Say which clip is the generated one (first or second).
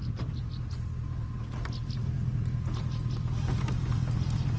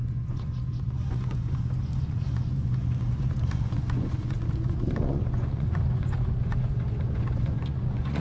second